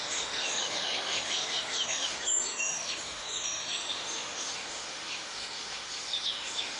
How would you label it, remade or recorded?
remade